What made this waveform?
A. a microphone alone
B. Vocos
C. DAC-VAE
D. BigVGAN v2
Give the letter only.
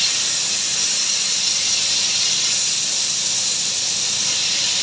A